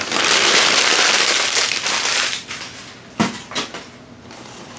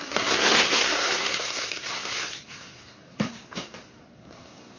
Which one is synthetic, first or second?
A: second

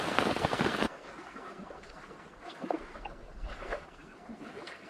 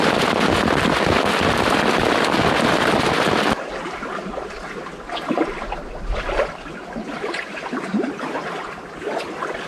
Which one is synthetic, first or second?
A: first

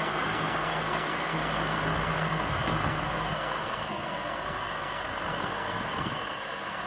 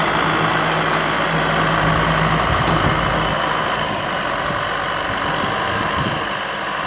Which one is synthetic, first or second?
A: first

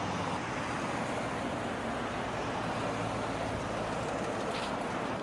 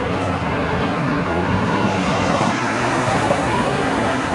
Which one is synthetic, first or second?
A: second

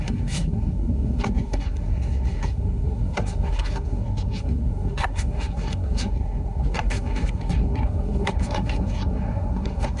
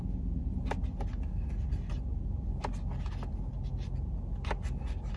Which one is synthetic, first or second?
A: first